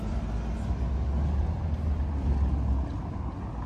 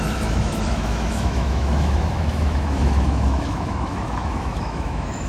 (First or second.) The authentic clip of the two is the first